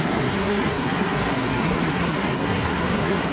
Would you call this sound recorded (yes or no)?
no